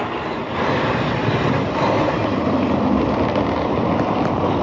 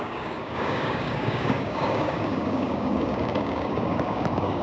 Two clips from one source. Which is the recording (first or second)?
first